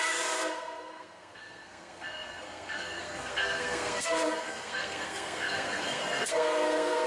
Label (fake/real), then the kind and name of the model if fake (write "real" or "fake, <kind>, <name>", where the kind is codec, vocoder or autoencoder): fake, codec, SNAC